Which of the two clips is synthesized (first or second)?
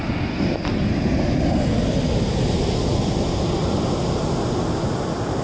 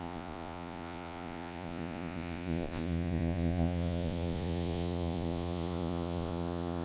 second